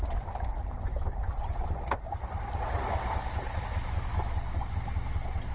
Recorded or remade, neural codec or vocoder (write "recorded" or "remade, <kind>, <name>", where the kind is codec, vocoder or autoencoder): recorded